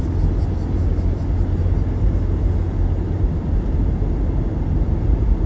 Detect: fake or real real